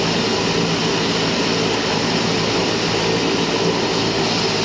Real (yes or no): yes